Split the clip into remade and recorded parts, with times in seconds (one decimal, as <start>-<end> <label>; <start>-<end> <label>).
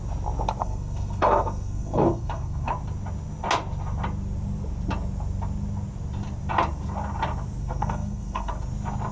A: 0.0-0.6 recorded; 0.6-2.7 remade; 2.7-7.6 recorded; 7.6-8.5 remade; 8.5-9.1 recorded